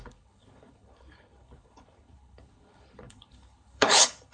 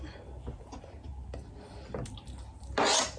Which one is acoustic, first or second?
second